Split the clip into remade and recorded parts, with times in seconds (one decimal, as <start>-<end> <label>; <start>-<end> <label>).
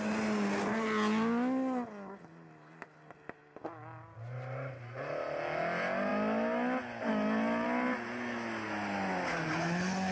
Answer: 0.0-10.1 recorded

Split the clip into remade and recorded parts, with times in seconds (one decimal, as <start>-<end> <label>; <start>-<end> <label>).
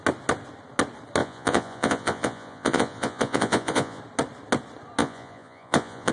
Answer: 0.0-1.2 recorded; 1.2-4.0 remade; 4.0-5.0 recorded; 5.0-6.1 remade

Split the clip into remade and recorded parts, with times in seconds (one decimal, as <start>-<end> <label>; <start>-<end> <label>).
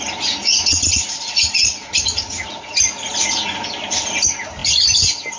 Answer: 0.0-0.4 recorded; 0.4-3.6 remade; 3.6-5.4 recorded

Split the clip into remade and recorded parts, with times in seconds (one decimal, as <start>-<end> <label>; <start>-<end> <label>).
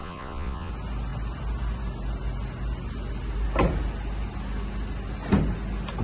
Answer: 0.0-0.7 remade; 0.7-6.0 recorded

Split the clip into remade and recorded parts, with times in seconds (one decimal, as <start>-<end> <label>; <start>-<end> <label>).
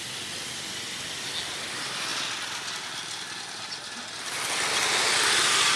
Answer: 0.0-5.8 recorded